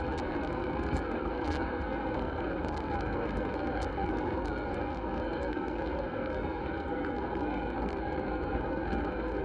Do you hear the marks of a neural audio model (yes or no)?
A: yes